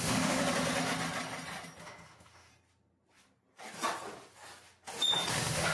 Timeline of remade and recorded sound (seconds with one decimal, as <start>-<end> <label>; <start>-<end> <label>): 0.0-0.4 remade; 0.4-1.8 recorded; 1.8-2.5 remade; 2.5-5.3 recorded; 5.3-5.7 remade